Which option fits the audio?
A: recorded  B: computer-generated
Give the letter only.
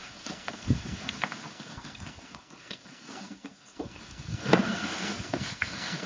B